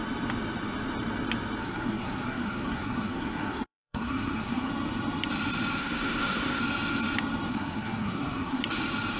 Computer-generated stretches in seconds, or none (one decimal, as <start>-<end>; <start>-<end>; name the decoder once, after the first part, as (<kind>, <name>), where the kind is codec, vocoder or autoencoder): 1.6-4.7 (codec, SNAC); 5.8-6.6; 7.5-8.6